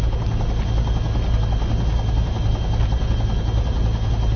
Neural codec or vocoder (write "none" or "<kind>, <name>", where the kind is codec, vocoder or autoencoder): none